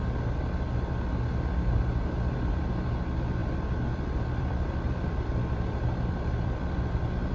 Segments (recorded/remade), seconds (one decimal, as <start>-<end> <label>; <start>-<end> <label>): 0.0-3.4 recorded; 3.4-7.3 remade